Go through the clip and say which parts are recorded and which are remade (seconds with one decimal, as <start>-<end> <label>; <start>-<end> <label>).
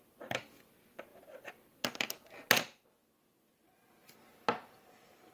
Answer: 0.0-5.3 recorded